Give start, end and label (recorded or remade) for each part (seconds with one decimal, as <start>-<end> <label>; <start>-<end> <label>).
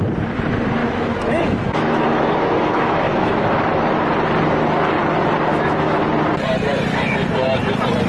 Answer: 0.0-0.8 recorded; 0.8-3.5 remade; 3.5-5.5 recorded; 5.5-6.0 remade; 6.0-8.1 recorded